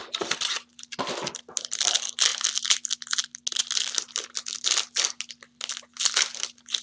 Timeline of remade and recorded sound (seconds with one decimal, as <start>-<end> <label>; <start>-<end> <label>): 0.0-6.8 recorded